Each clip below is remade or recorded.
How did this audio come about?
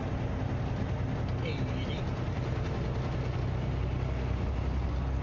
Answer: recorded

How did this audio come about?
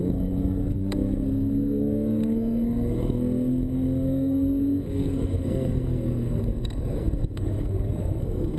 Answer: remade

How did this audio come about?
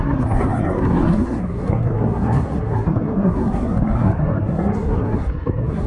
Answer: remade